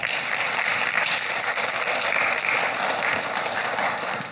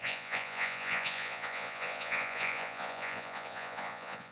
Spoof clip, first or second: second